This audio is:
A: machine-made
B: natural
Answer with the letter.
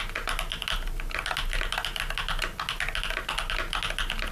B